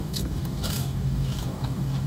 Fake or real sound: fake